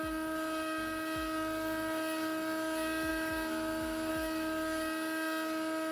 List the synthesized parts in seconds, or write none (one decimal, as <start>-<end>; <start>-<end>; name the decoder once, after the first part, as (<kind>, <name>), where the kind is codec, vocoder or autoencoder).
3.1-4.1 (autoencoder, DAC-VAE)